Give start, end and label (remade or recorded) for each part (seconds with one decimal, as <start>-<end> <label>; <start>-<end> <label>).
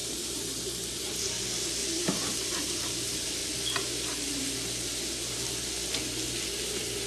0.0-1.1 remade; 1.1-1.8 recorded; 1.8-2.3 remade; 2.3-7.1 recorded